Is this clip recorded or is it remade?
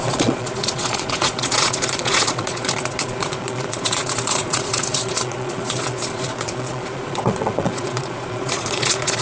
remade